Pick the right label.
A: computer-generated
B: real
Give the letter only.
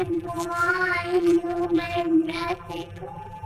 A